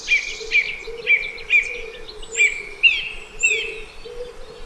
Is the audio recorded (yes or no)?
yes